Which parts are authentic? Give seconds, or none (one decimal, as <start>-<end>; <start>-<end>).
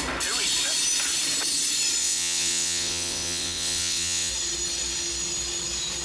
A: 0.0-2.0; 4.3-6.0